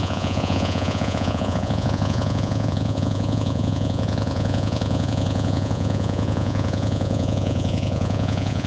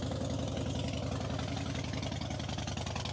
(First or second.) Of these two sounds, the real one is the second